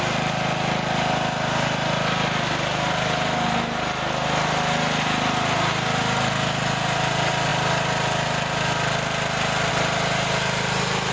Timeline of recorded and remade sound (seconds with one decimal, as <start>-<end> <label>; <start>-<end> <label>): 0.0-11.1 recorded